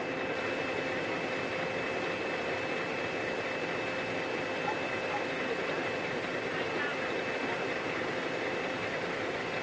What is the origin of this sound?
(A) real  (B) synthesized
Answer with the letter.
A